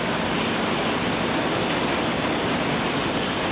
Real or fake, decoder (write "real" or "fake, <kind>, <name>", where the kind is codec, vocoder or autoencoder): real